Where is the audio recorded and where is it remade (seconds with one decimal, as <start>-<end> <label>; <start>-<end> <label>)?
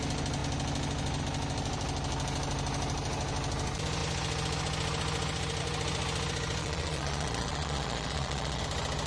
0.0-6.6 recorded; 6.6-8.6 remade; 8.6-9.1 recorded